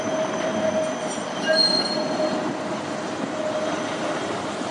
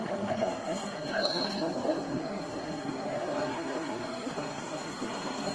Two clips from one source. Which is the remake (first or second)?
second